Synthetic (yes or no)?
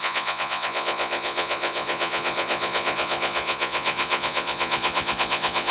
yes